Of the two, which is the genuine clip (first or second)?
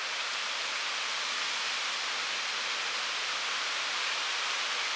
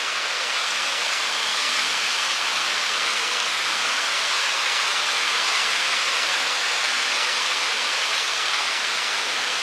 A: first